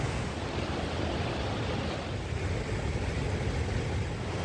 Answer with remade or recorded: recorded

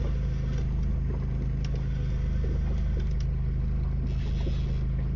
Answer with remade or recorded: recorded